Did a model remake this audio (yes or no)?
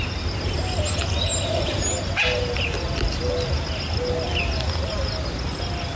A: no